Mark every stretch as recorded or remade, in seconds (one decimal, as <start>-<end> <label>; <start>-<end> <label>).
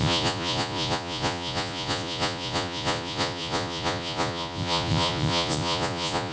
0.0-6.3 remade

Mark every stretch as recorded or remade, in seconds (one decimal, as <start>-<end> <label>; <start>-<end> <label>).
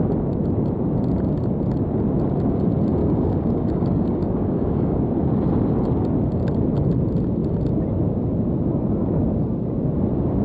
0.0-3.0 recorded; 3.0-5.0 remade; 5.0-10.4 recorded